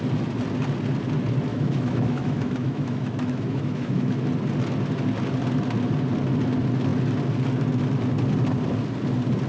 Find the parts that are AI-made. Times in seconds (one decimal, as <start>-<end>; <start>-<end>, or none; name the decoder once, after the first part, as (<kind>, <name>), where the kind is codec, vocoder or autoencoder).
1.5-4.3 (autoencoder, DAC-VAE)